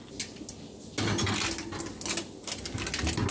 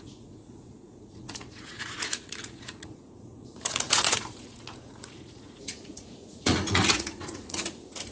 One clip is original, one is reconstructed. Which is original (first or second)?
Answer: first